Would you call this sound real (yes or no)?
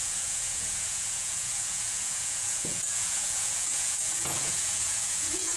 no